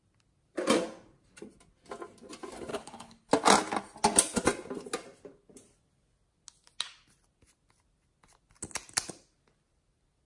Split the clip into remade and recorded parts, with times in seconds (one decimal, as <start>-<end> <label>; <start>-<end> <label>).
0.0-2.7 recorded; 2.7-3.3 remade; 3.3-10.3 recorded

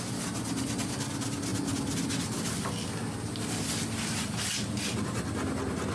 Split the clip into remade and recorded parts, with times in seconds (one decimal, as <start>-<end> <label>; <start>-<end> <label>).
0.0-5.9 recorded

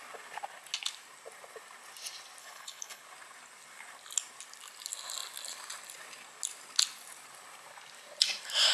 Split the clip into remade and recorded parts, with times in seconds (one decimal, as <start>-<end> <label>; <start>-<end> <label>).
0.0-2.4 recorded; 2.4-3.0 remade; 3.0-8.7 recorded

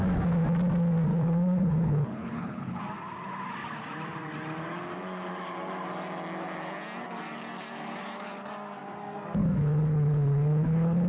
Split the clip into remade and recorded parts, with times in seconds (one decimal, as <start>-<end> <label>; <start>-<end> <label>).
0.0-1.1 recorded; 1.1-2.8 remade; 2.8-9.4 recorded; 9.4-11.1 remade

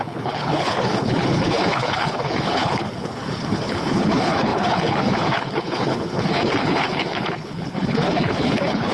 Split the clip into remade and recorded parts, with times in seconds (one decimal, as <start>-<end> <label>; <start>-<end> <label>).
0.0-8.9 remade